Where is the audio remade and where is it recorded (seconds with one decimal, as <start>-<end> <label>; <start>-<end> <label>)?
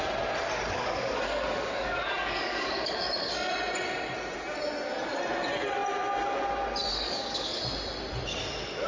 0.0-0.7 recorded; 0.7-3.5 remade; 3.5-6.9 recorded; 6.9-7.6 remade; 7.6-8.9 recorded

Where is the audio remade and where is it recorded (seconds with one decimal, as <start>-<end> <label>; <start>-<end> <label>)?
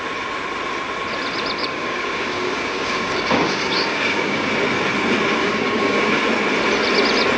0.0-1.6 recorded; 1.6-4.5 remade; 4.5-5.4 recorded; 5.4-6.1 remade; 6.1-7.4 recorded